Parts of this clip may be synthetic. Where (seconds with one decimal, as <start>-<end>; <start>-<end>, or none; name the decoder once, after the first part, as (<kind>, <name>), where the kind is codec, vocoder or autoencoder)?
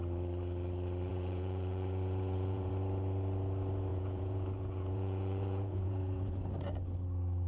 1.1-2.7 (vocoder, Vocos); 3.9-6.4